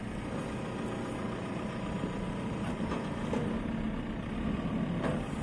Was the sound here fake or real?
real